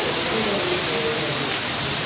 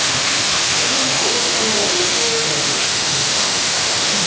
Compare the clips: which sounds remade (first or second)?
second